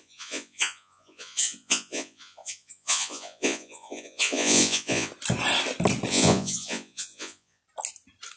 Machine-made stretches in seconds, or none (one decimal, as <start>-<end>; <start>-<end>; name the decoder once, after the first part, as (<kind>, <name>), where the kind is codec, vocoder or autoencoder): 0.0-5.1 (vocoder, Vocos); 6.1-7.6